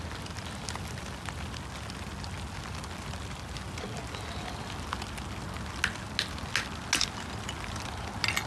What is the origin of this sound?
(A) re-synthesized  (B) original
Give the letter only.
B